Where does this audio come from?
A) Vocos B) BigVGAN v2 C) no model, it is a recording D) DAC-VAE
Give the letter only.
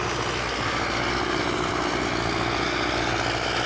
C